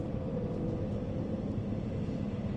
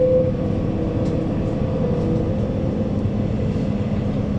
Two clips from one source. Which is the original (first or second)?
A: second